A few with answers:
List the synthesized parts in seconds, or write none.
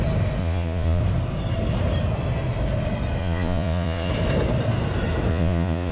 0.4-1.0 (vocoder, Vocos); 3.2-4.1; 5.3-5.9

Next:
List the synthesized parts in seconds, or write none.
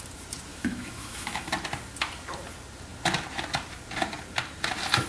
0.5-1.5 (autoencoder, DAC-VAE)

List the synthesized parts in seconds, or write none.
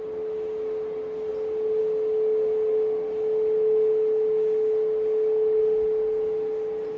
none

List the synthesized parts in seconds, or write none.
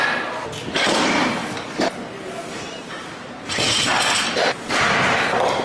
1.4-4.8 (vocoder, BigVGAN v2)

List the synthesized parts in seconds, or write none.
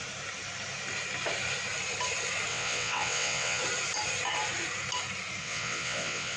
2.5-3.6 (vocoder, WaveNeXt); 5.4-6.4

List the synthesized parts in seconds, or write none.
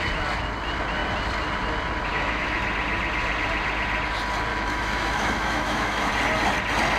2.1-2.6 (autoencoder, DAC-VAE); 4.5-6.1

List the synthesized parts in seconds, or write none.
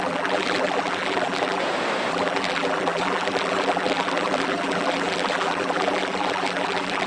0.0-1.6 (vocoder, BigVGAN v2); 2.1-7.1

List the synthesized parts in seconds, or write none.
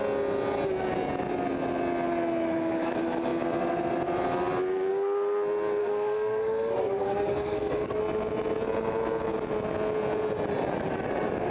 5.8-8.0 (codec, SNAC)